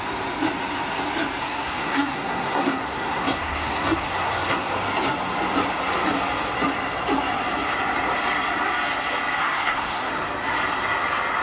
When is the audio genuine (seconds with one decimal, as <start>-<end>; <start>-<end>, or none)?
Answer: 0.0-1.4; 4.7-9.4; 10.1-11.4